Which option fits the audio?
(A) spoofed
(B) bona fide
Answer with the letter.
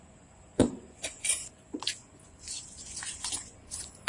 A